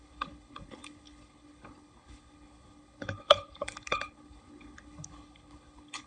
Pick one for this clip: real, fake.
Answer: fake